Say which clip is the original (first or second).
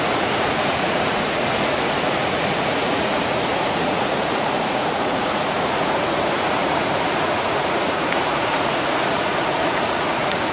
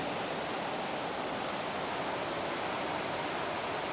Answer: second